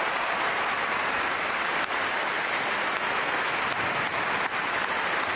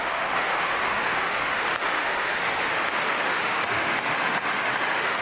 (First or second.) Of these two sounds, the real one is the first